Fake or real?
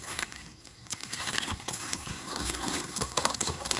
fake